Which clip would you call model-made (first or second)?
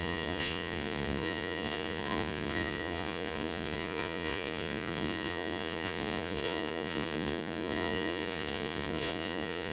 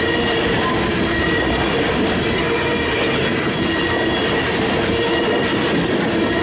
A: first